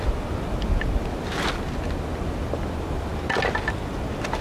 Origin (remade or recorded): recorded